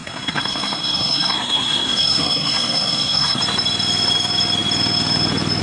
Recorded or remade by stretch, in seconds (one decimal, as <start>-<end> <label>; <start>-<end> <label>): 0.0-3.4 remade; 3.4-5.6 recorded